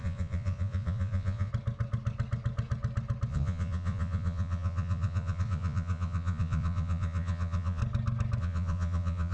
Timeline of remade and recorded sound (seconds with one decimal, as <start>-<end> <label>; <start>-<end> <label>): 0.0-1.5 remade; 1.5-3.3 recorded; 3.3-7.8 remade; 7.8-8.4 recorded; 8.4-9.3 remade